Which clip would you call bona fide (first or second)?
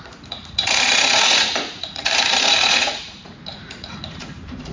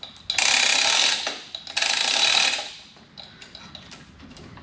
second